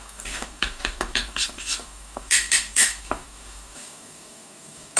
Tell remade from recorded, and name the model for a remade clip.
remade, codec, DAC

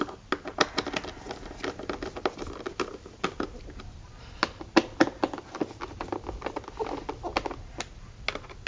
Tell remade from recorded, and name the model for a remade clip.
recorded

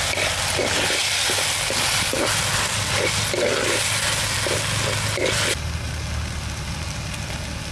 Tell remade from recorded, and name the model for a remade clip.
recorded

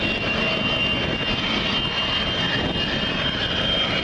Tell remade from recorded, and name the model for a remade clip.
recorded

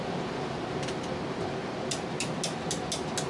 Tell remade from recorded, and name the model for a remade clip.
recorded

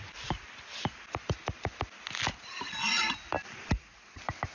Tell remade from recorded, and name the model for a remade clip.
recorded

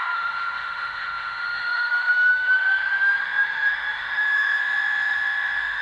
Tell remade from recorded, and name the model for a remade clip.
remade, autoencoder, DAC-VAE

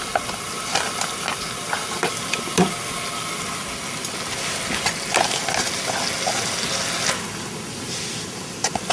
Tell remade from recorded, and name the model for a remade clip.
recorded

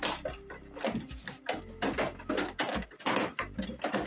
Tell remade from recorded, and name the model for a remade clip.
recorded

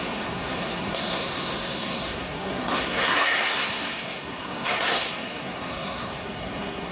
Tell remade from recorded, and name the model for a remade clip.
remade, codec, SNAC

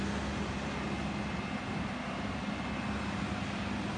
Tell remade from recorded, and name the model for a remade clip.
recorded